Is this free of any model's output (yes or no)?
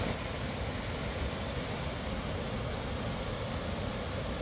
yes